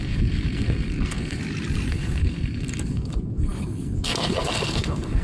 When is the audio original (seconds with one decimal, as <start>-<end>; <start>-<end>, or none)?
1.4-1.9